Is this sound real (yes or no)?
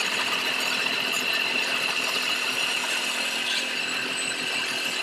yes